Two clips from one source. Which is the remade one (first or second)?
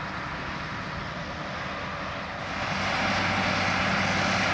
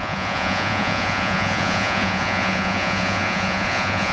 second